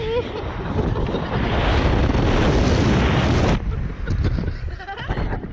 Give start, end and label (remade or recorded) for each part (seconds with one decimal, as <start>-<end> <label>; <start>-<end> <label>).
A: 0.0-5.5 recorded